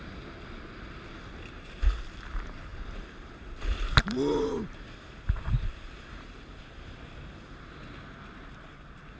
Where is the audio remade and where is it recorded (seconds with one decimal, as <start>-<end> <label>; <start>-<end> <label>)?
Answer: 0.0-2.7 recorded; 2.7-6.6 remade; 6.6-9.2 recorded